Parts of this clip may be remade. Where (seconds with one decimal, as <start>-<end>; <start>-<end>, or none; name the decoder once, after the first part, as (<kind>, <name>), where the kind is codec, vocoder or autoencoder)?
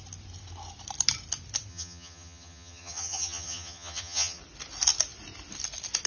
1.7-4.4 (vocoder, HiFi-GAN)